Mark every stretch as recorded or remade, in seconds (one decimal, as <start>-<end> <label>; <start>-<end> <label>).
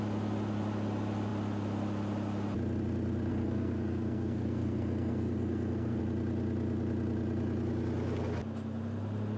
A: 0.0-3.3 recorded; 3.3-6.0 remade; 6.0-9.4 recorded